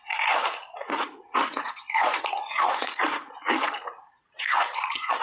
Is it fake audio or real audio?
fake